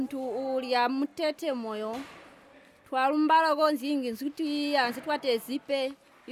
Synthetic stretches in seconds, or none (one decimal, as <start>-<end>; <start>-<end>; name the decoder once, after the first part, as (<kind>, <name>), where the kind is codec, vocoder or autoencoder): none